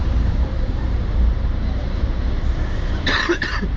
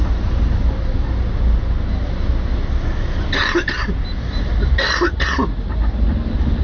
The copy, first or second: first